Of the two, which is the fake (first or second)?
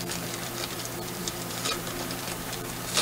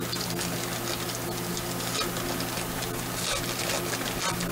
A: first